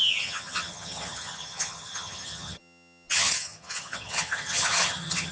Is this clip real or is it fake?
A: fake